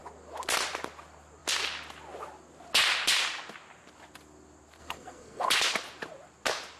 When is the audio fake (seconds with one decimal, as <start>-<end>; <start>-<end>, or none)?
4.8-5.5